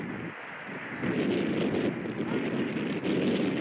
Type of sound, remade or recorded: recorded